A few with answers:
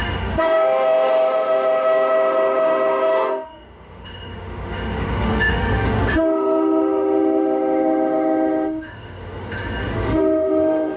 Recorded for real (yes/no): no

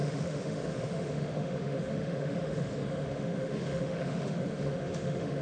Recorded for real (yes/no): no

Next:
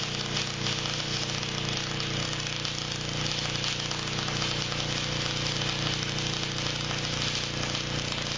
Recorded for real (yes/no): yes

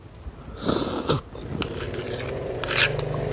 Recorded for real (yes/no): yes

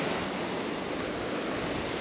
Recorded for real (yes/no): yes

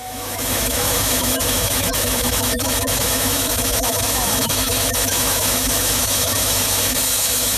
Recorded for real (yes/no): no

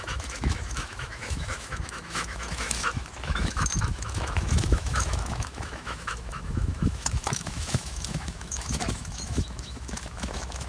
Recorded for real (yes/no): no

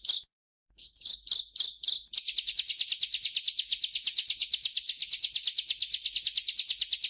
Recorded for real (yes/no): no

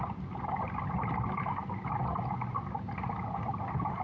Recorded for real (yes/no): yes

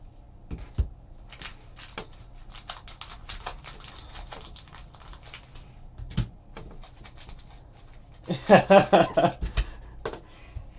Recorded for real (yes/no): yes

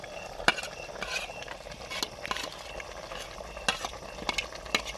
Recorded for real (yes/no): yes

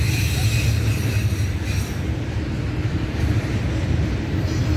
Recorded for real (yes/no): yes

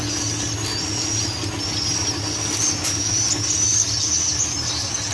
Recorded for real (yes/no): yes